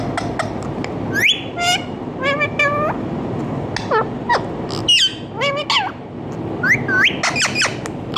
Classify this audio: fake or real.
real